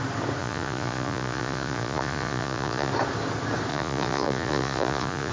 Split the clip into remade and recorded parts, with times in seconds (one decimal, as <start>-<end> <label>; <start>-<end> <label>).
0.0-0.4 recorded; 0.4-2.9 remade; 2.9-3.7 recorded; 3.7-5.3 remade